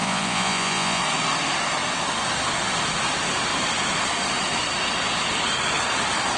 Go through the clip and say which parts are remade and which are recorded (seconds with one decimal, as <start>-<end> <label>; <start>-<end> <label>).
0.0-1.0 remade; 1.0-6.4 recorded

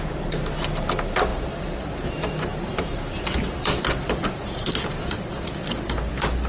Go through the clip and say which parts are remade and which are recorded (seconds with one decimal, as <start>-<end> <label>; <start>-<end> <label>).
0.0-1.3 recorded; 1.3-2.0 remade; 2.0-2.5 recorded; 2.5-6.1 remade; 6.1-6.5 recorded

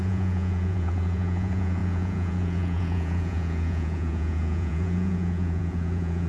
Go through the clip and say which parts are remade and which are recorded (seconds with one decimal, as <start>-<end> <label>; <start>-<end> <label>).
0.0-6.3 remade

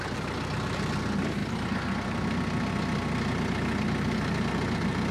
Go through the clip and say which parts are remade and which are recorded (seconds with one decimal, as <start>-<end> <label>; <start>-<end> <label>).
0.0-5.1 recorded

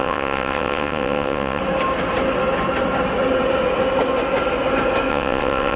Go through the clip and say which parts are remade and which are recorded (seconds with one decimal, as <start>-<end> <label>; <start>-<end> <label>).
0.0-1.6 remade; 1.6-5.1 recorded; 5.1-5.8 remade

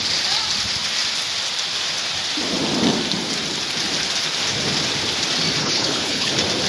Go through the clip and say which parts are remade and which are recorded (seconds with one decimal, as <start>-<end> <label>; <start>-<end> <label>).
0.0-5.6 recorded; 5.6-6.3 remade; 6.3-6.7 recorded

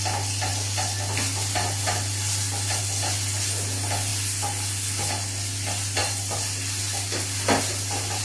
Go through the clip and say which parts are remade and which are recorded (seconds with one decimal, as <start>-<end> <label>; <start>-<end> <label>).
0.0-8.2 recorded

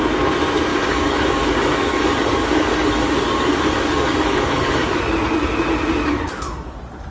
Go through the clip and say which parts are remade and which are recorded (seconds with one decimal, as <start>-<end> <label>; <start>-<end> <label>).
0.0-0.7 recorded; 0.7-5.0 remade; 5.0-7.1 recorded